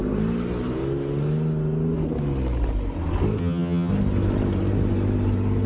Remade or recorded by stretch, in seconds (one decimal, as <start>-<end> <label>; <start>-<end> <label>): 0.0-3.4 recorded; 3.4-3.9 remade; 3.9-5.7 recorded